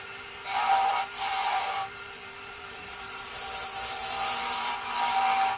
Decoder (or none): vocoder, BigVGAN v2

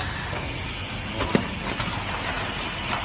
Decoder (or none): none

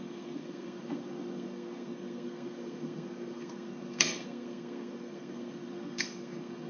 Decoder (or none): codec, SNAC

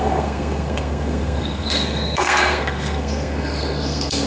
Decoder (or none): codec, SNAC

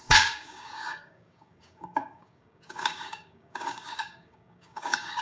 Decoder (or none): codec, DAC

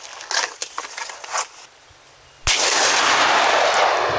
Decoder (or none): none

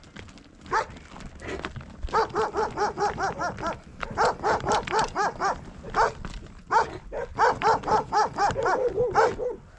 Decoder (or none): none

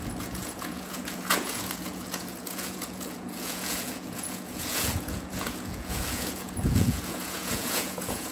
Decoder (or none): vocoder, Vocos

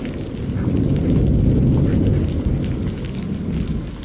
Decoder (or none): none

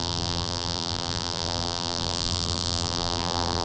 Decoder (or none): vocoder, BigVGAN v2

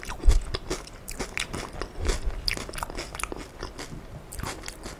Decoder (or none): none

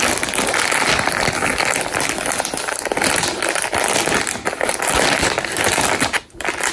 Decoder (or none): none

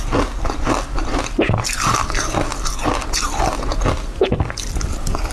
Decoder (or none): none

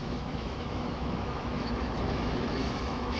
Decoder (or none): autoencoder, DAC-VAE